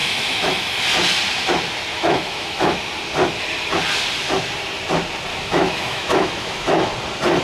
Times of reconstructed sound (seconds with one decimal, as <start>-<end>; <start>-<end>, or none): 0.0-0.7; 1.9-2.8; 5.3-6.9